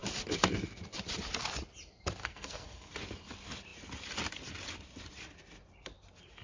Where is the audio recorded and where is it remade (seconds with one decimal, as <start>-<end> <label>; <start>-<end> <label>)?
0.0-2.2 recorded; 2.2-2.9 remade; 2.9-6.4 recorded